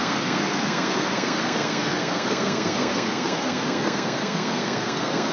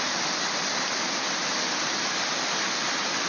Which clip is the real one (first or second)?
second